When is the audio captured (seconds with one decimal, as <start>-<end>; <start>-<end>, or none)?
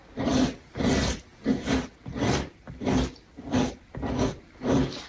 0.0-5.1